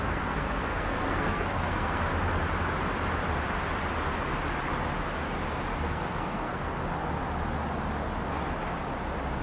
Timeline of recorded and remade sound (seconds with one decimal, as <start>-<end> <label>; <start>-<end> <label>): 0.0-2.1 remade; 2.1-5.8 recorded; 5.8-6.8 remade; 6.8-9.4 recorded